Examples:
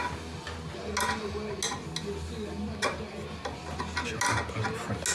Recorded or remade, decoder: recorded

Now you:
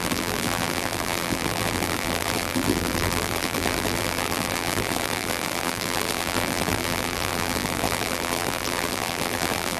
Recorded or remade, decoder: remade, vocoder, BigVGAN v2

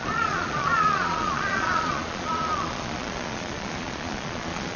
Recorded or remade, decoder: remade, vocoder, Vocos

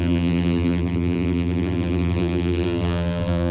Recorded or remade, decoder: remade, vocoder, BigVGAN v2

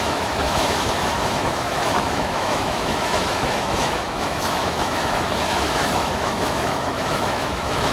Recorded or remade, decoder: remade, autoencoder, DAC-VAE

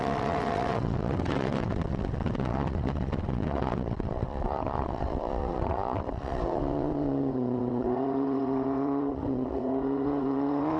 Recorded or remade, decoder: remade, vocoder, WaveNeXt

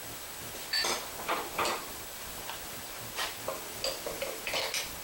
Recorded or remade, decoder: recorded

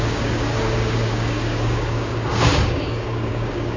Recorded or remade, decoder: remade, codec, DAC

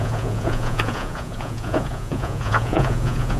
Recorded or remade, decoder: remade, vocoder, Vocos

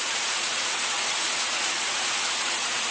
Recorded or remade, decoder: remade, vocoder, Vocos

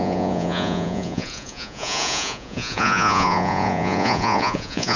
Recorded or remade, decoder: remade, vocoder, Vocos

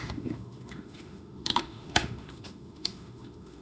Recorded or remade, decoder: remade, autoencoder, DAC-VAE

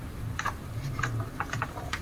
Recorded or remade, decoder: remade, vocoder, BigVGAN v2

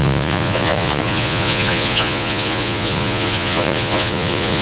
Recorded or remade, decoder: remade, vocoder, Vocos